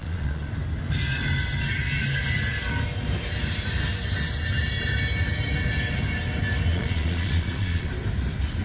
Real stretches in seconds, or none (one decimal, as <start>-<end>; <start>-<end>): 0.5-6.7; 7.9-8.6